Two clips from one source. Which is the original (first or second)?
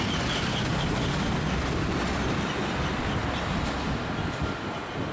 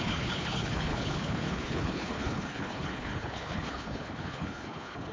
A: first